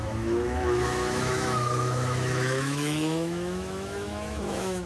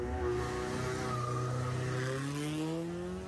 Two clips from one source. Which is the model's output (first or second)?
first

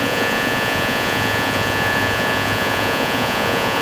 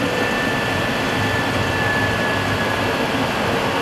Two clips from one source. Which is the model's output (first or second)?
first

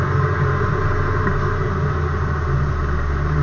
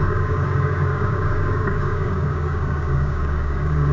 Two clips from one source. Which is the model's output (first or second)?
second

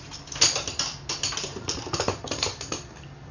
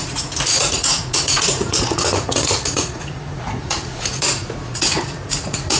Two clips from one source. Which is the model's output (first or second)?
second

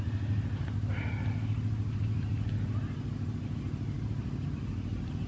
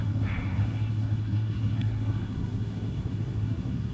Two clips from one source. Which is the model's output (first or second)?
second